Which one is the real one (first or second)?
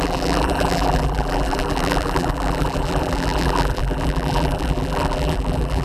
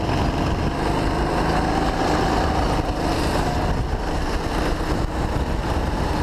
second